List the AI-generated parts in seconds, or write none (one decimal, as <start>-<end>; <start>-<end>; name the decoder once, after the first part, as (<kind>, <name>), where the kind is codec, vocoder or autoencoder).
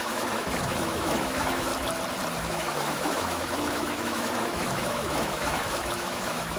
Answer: 0.0-1.7 (autoencoder, DAC-VAE); 2.4-6.6